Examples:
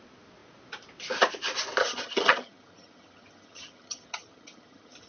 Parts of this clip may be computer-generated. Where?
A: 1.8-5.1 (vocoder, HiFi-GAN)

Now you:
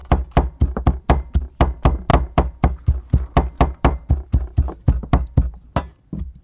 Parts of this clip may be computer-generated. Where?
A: none

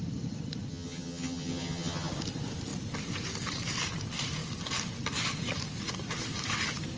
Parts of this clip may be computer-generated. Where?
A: 0.7-2.1 (vocoder, HiFi-GAN)

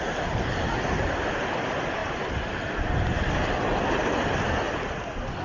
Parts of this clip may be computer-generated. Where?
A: none

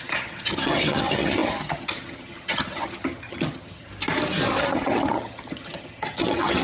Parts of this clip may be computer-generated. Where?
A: 0.0-3.9 (vocoder, HiFi-GAN); 4.6-6.6

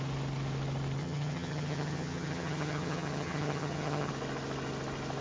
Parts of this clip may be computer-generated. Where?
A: 1.0-4.1 (vocoder, HiFi-GAN)

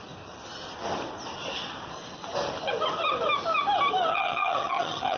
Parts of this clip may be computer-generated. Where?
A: 4.1-5.2 (vocoder, HiFi-GAN)